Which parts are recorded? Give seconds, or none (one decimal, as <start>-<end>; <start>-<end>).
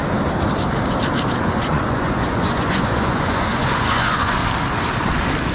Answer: 0.0-1.4; 4.4-5.5